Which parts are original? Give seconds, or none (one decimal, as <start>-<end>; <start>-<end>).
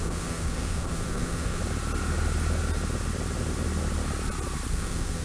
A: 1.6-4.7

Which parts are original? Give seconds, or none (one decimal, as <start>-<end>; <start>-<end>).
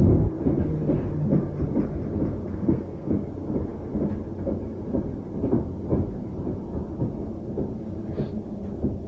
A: 0.0-2.5; 3.1-9.1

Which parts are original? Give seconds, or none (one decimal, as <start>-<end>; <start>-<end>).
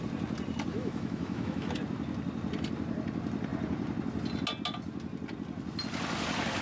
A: 0.0-0.7; 1.7-6.6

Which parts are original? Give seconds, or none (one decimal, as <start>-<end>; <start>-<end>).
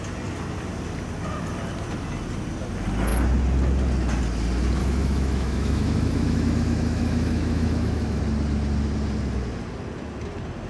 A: 0.0-4.8; 8.2-10.7